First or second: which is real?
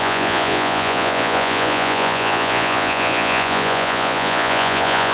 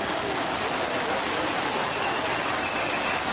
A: second